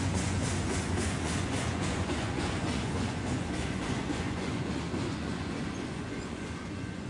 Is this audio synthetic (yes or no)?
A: yes